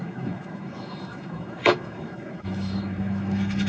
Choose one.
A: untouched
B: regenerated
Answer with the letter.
B